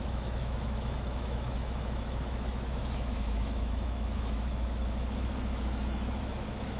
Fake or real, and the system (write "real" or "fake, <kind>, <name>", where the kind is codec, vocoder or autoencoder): fake, autoencoder, DAC-VAE